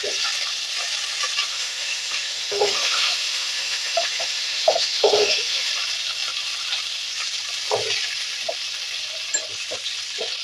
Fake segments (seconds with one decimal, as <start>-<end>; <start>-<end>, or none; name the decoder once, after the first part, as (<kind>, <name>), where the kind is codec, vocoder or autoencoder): 1.5-5.7 (autoencoder, DAC-VAE)